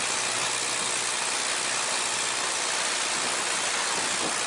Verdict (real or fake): real